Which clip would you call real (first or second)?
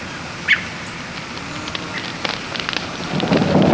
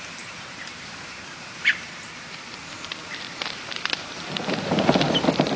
first